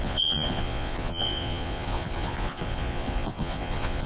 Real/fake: fake